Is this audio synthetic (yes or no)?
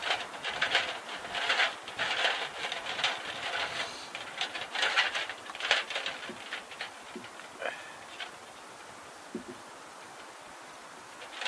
no